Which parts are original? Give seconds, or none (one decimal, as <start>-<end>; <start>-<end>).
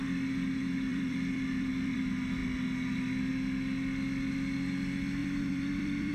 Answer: 0.0-0.9; 2.0-5.2